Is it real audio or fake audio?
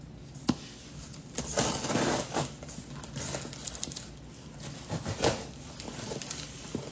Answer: real